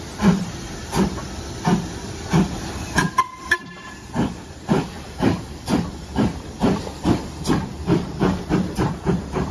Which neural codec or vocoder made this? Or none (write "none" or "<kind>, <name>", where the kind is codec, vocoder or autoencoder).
vocoder, BigVGAN v2